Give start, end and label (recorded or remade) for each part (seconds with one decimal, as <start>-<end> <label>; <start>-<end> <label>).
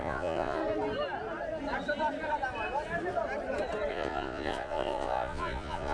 0.0-0.6 remade; 0.6-3.9 recorded; 3.9-5.9 remade